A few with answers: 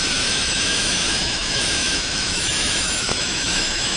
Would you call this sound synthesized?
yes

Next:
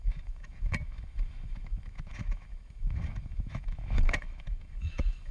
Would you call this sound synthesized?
yes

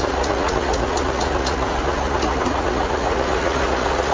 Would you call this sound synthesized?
yes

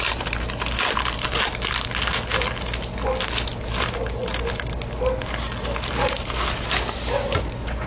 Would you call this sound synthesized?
no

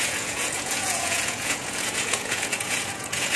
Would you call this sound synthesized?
yes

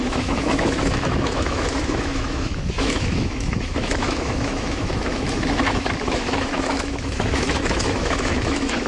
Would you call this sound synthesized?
yes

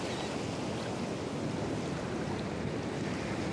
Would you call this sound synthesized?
no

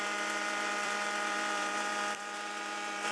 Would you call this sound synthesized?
yes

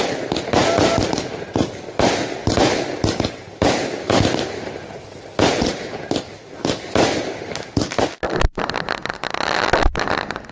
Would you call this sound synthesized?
no